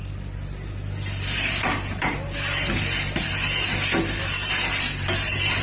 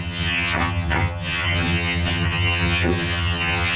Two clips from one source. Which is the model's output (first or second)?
second